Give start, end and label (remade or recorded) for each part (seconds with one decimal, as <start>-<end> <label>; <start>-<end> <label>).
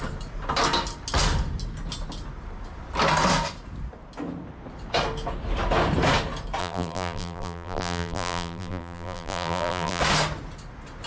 0.0-6.6 recorded; 6.6-10.0 remade; 10.0-11.1 recorded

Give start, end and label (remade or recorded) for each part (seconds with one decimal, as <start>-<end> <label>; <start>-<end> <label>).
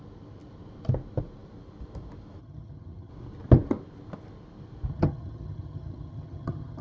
0.0-2.4 recorded; 2.4-3.1 remade; 3.1-4.9 recorded; 4.9-6.8 remade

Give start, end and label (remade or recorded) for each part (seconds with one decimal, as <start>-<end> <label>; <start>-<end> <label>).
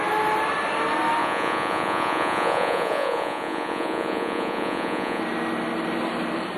0.0-1.2 recorded; 1.2-5.2 remade; 5.2-6.6 recorded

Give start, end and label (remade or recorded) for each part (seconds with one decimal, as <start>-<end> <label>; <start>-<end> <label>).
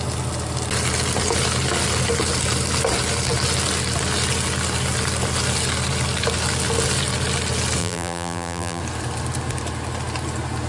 0.0-7.8 recorded; 7.8-8.8 remade; 8.8-10.7 recorded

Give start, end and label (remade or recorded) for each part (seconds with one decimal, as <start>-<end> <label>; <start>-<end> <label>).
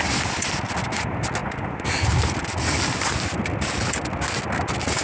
0.0-5.0 recorded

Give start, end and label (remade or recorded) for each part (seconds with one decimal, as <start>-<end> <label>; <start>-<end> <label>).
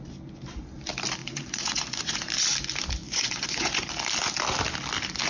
0.0-1.2 recorded; 1.2-2.2 remade; 2.2-3.0 recorded; 3.0-3.9 remade; 3.9-5.3 recorded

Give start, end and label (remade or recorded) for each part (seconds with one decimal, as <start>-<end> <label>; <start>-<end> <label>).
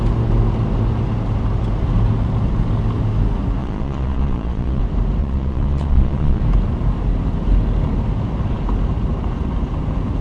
0.0-3.6 recorded; 3.6-4.8 remade; 4.8-5.2 recorded; 5.2-6.4 remade; 6.4-10.2 recorded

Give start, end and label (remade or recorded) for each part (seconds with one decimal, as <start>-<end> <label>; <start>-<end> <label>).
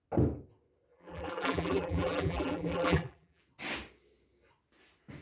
0.0-0.9 recorded; 0.9-3.4 remade; 3.4-5.2 recorded